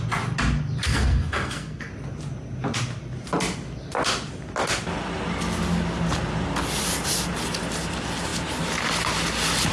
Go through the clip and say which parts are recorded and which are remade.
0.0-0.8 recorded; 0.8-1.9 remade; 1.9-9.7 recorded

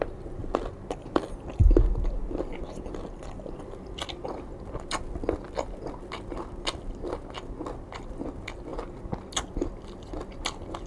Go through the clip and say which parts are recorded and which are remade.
0.0-10.9 recorded